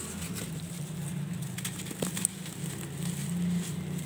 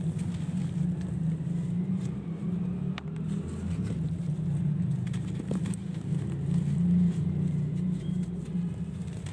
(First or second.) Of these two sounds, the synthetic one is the second